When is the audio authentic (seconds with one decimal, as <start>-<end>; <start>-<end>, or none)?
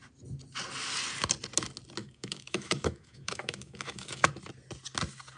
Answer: 0.0-2.0; 4.3-5.4